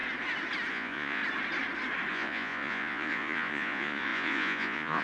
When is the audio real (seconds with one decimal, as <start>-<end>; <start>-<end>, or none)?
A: 0.0-0.7; 1.2-2.1